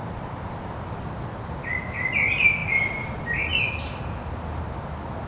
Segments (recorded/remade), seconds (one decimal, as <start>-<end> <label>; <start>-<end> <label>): 0.0-1.2 remade; 1.2-2.6 recorded; 2.6-3.6 remade; 3.6-5.3 recorded